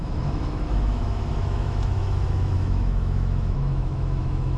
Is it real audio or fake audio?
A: fake